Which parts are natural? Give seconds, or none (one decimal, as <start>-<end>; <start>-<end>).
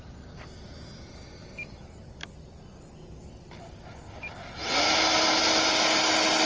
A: 0.0-6.5